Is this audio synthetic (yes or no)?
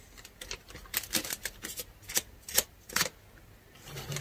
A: no